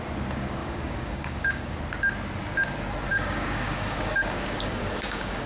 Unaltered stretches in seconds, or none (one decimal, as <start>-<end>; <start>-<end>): 0.0-0.6; 1.8-3.1